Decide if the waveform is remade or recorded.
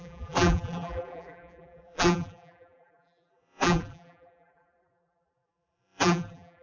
remade